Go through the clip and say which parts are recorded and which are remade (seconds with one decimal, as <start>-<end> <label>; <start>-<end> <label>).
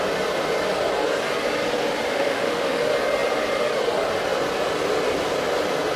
0.0-2.1 recorded; 2.1-2.8 remade; 2.8-6.0 recorded